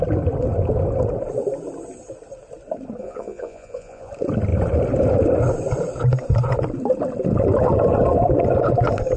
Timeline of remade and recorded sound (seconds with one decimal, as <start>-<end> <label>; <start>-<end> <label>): 0.0-3.0 recorded; 3.0-4.1 remade; 4.1-9.2 recorded